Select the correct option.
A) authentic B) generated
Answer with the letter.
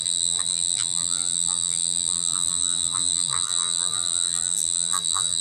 B